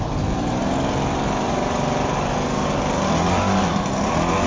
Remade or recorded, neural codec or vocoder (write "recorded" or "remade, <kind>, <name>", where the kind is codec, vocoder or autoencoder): recorded